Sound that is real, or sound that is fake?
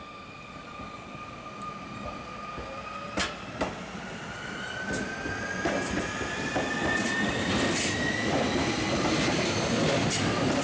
real